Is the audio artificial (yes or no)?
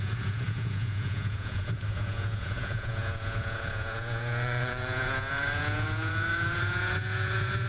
yes